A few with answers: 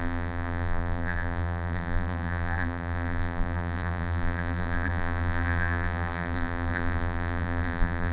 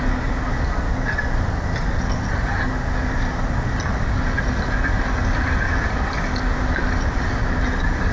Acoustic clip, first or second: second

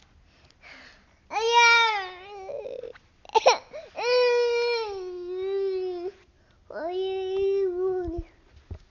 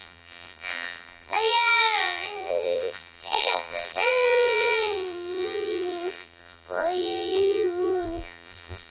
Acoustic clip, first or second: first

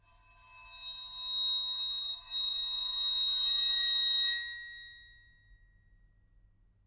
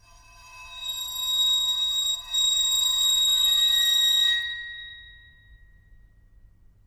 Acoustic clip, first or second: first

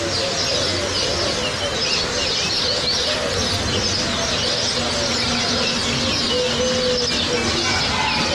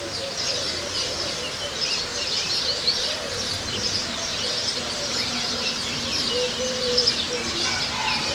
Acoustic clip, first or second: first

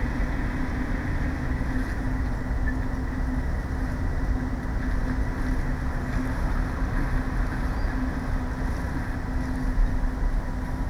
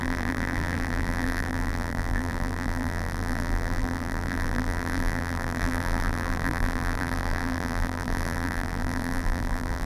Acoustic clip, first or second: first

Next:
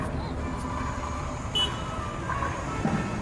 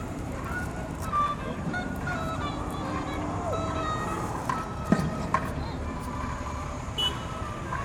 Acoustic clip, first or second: first